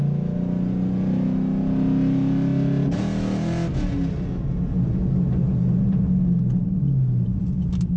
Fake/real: real